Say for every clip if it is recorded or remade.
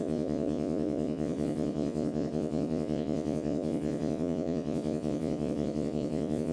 remade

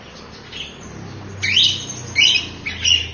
recorded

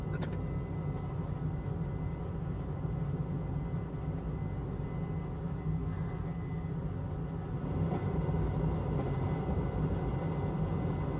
recorded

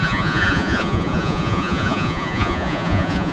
remade